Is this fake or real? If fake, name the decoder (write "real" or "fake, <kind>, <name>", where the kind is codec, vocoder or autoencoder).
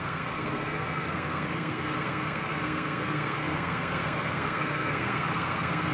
fake, codec, SNAC